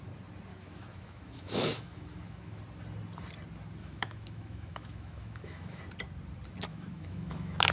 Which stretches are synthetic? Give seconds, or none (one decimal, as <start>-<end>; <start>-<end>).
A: 0.5-2.6; 3.8-5.8; 6.7-7.7